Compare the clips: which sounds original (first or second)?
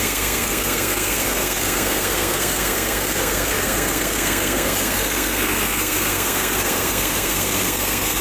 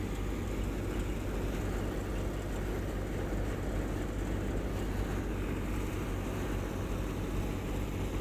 second